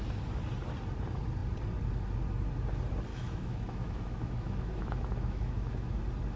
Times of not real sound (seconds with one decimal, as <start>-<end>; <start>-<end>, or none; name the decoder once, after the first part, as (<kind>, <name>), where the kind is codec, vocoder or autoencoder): 3.1-6.0 (autoencoder, DAC-VAE)